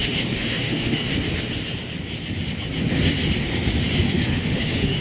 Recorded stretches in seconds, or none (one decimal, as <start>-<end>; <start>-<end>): 1.1-4.1